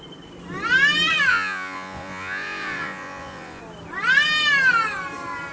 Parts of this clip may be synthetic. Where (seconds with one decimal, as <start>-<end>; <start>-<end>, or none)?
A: 1.3-3.6